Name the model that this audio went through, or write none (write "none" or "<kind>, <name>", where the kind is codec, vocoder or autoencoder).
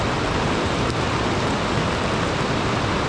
none